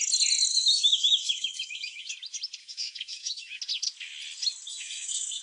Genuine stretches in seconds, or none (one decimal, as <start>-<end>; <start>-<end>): 0.0-0.5; 2.1-2.6; 3.6-4.7

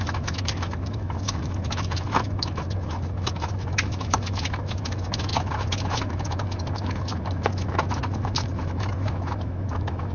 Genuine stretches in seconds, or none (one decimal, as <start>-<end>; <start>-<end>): none

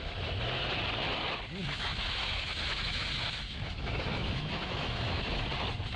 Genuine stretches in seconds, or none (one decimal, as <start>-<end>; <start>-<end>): 0.0-1.6; 5.2-6.0

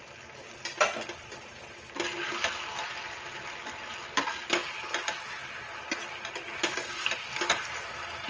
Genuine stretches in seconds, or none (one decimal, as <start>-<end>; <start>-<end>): 0.0-8.3